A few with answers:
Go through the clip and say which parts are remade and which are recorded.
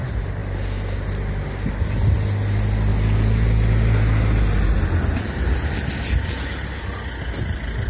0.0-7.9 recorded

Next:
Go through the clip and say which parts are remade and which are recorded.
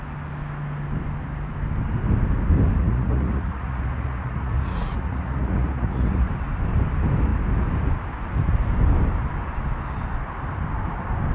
0.0-2.8 recorded; 2.8-6.3 remade; 6.3-11.3 recorded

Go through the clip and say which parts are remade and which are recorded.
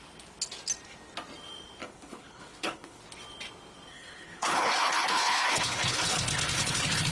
0.0-1.8 recorded; 1.8-3.0 remade; 3.0-3.9 recorded; 3.9-7.1 remade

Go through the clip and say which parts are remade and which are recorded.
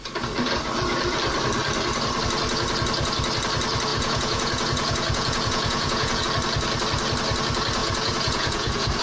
0.0-3.9 recorded; 3.9-6.2 remade; 6.2-7.8 recorded; 7.8-9.0 remade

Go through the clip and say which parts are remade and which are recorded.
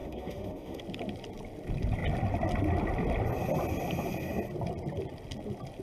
0.0-0.8 remade; 0.8-5.8 recorded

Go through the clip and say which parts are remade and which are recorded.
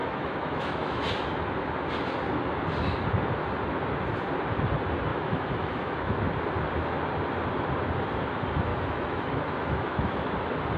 0.0-1.1 remade; 1.1-5.1 recorded; 5.1-6.2 remade; 6.2-8.7 recorded; 8.7-10.3 remade; 10.3-10.8 recorded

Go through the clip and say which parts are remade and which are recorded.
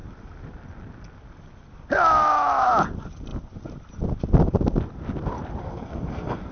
0.0-5.6 recorded; 5.6-6.5 remade